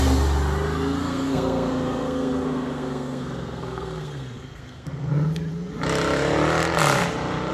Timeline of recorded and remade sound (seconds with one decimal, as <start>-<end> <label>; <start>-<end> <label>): 0.0-1.0 recorded; 1.0-5.1 remade; 5.1-7.5 recorded